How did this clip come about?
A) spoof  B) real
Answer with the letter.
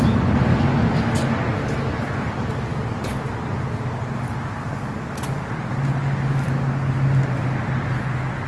B